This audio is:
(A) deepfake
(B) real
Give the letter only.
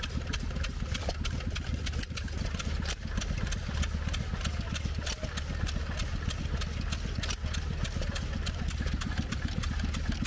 B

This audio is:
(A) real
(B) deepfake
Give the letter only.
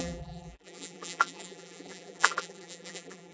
B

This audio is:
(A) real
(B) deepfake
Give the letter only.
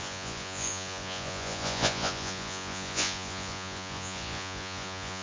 B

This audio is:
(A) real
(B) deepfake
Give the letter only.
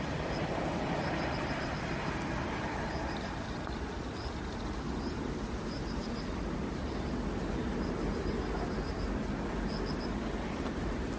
A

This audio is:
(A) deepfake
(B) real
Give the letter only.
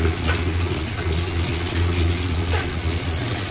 A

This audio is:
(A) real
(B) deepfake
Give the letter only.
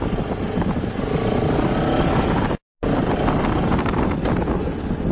A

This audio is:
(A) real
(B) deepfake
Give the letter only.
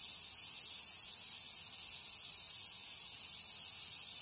A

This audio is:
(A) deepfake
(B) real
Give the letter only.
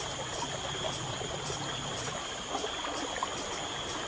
B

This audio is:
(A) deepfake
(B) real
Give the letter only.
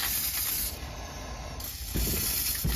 B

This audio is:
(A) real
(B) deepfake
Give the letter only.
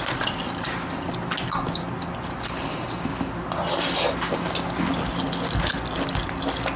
A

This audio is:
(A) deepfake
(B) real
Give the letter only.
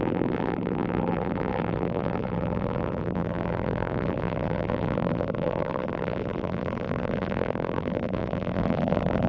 A